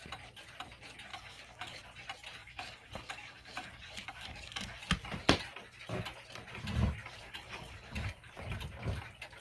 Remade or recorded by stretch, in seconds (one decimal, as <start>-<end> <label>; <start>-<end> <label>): 0.0-1.1 recorded; 1.1-1.8 remade; 1.8-2.4 recorded; 2.4-4.8 remade; 4.8-7.0 recorded; 7.0-8.3 remade; 8.3-9.4 recorded

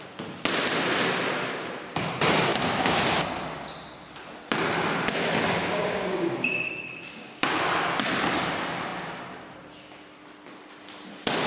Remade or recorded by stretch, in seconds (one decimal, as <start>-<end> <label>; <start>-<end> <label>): 0.0-2.5 recorded; 2.5-3.0 remade; 3.0-5.6 recorded; 5.6-7.6 remade; 7.6-11.5 recorded

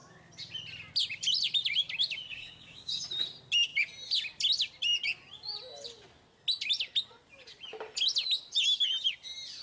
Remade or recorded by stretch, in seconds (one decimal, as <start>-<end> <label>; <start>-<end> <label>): 0.0-2.3 recorded; 2.3-3.0 remade; 3.0-9.6 recorded

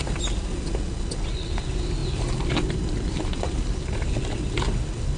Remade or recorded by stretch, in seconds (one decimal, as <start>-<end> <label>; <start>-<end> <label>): 0.0-5.2 recorded